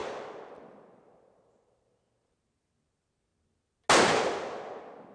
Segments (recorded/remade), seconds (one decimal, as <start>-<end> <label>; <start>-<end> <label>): 0.0-5.1 recorded